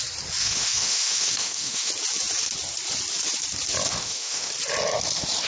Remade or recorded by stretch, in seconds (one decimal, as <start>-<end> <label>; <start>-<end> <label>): 0.0-0.4 recorded; 0.4-1.9 remade; 1.9-4.0 recorded; 4.0-4.5 remade; 4.5-5.5 recorded